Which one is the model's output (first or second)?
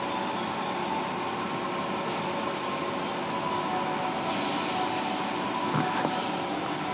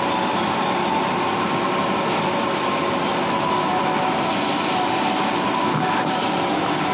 second